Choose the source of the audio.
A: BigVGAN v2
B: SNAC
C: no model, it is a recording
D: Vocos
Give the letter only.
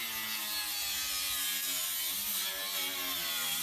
C